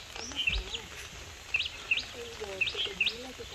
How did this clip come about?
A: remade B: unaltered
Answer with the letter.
B